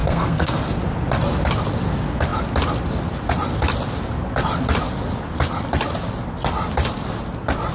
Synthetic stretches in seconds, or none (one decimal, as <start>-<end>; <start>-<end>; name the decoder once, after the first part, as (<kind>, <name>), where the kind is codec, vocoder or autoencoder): 0.0-0.6 (codec, SNAC)